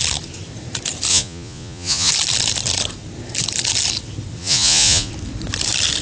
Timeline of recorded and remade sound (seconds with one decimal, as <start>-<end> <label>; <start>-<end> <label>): 0.0-1.1 recorded; 1.1-2.1 remade; 2.1-4.4 recorded; 4.4-5.1 remade; 5.1-6.0 recorded